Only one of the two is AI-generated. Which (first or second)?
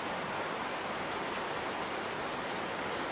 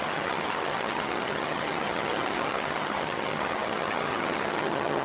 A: second